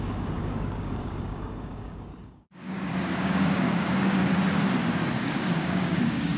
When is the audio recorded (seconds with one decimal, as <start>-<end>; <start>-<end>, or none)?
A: 4.2-5.2